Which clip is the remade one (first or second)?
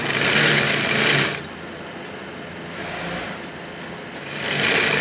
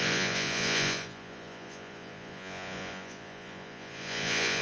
second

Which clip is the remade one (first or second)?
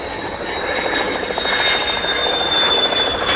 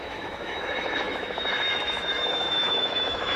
second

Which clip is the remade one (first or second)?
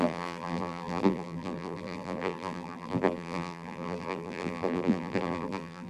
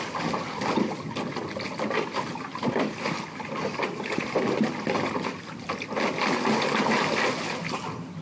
first